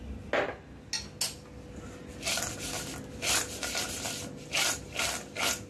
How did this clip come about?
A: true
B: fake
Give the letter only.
A